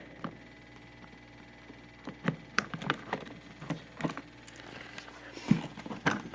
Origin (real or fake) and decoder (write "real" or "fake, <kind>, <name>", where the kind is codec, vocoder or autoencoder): real